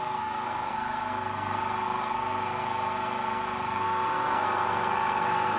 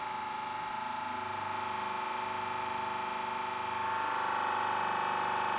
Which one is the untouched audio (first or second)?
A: second